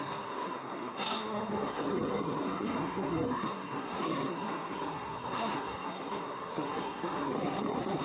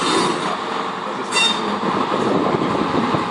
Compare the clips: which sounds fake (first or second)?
first